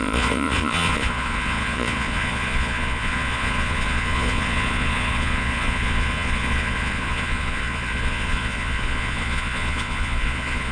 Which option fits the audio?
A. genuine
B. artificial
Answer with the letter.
B